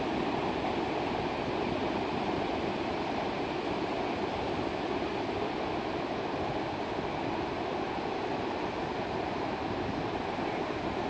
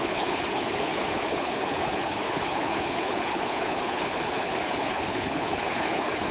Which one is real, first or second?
first